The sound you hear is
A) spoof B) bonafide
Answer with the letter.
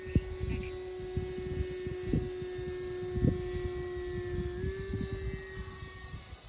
B